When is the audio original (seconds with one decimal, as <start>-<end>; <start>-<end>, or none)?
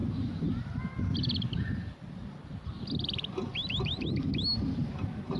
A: 0.0-5.4